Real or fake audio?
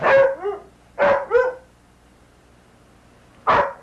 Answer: real